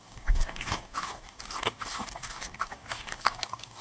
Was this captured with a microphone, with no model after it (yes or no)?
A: no